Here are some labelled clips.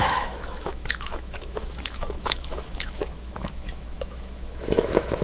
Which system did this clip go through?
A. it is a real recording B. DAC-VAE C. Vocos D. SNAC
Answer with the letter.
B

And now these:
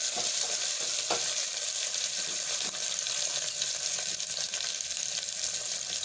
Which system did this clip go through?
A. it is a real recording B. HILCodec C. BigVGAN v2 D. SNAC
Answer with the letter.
C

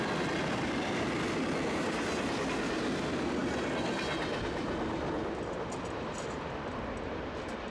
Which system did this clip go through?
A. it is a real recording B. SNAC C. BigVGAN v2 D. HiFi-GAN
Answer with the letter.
A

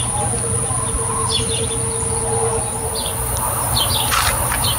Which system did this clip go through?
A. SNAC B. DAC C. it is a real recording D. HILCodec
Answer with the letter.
C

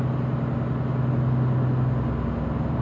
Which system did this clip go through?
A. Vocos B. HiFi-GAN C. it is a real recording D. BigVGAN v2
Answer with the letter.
C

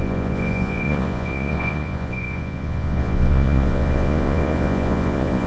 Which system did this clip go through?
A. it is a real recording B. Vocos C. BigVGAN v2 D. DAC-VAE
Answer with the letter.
B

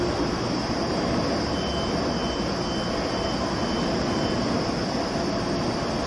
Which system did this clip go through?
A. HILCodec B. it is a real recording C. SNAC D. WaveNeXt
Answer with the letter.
B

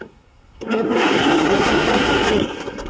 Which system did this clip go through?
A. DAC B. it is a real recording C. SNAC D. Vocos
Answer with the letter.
C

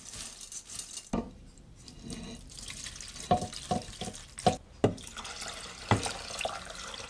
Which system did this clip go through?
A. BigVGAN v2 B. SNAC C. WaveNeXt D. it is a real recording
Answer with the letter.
D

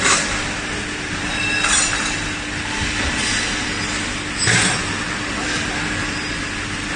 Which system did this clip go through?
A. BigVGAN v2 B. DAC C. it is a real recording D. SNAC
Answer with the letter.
C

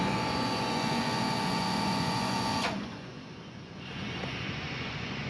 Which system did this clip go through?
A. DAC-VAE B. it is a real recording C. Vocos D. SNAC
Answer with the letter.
C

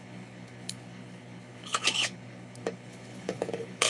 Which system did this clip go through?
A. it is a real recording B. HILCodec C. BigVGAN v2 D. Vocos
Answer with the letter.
B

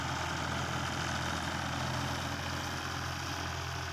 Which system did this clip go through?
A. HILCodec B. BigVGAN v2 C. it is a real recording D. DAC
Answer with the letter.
C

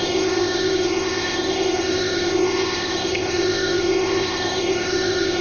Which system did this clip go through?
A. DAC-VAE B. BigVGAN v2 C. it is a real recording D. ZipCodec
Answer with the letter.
D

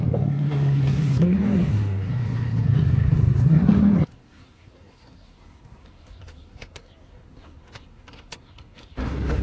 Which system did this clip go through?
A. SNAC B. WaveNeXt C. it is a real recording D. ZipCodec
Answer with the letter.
A